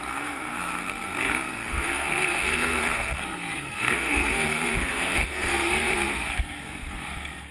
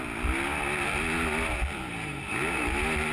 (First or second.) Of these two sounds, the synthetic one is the first